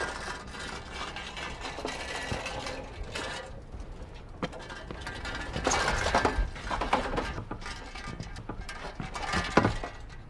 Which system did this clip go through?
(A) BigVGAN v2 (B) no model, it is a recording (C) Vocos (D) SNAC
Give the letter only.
B